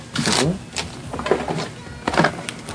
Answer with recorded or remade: recorded